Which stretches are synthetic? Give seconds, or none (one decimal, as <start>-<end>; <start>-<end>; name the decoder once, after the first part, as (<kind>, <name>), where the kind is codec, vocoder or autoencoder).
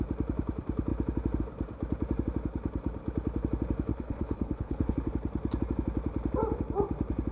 3.9-5.1 (codec, HILCodec)